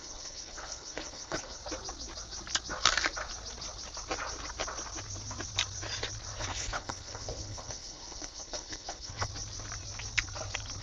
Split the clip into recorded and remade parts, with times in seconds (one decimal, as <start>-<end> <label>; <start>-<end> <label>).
0.0-1.6 remade; 1.6-6.4 recorded; 6.4-9.3 remade; 9.3-10.8 recorded